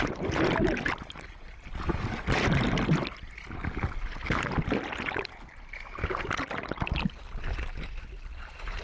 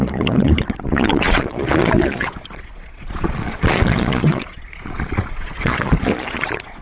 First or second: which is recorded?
first